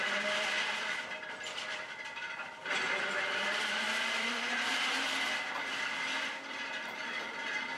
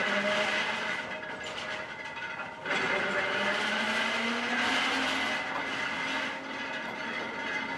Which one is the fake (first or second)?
first